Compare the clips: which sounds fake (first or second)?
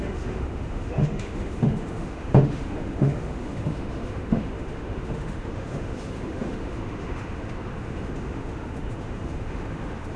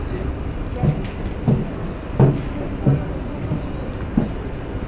first